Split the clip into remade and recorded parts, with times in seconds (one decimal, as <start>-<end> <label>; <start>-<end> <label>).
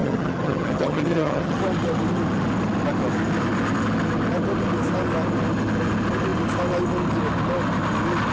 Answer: 0.0-1.6 remade; 1.6-8.3 recorded